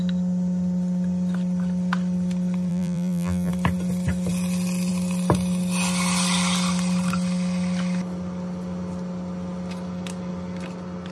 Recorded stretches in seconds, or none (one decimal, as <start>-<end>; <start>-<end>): 0.0-2.7; 3.5-11.1